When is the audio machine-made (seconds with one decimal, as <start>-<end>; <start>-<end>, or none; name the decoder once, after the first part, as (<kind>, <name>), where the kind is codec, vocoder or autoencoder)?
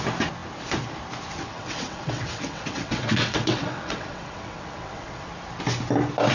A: 1.5-5.3 (vocoder, WaveNeXt)